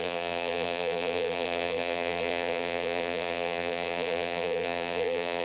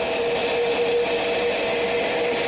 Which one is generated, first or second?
first